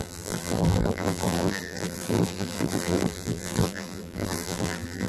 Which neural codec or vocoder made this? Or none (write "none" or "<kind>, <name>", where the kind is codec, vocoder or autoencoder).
vocoder, BigVGAN v2